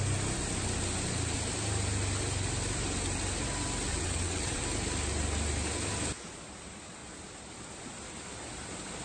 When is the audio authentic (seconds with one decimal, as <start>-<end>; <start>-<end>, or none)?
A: 0.0-3.9; 4.6-9.0